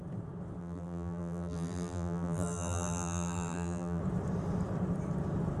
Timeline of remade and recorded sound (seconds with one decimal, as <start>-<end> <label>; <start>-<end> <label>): 0.0-0.6 recorded; 0.6-4.0 remade; 4.0-5.6 recorded